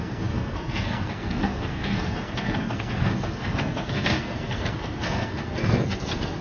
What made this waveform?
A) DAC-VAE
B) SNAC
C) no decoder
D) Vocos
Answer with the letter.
B